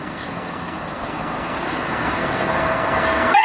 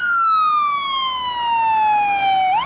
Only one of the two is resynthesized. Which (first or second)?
first